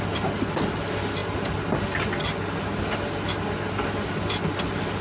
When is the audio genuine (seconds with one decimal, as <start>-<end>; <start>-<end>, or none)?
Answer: 0.0-5.0